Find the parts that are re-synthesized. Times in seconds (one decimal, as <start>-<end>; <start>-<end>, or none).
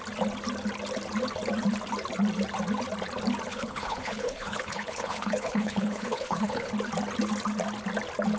3.5-6.7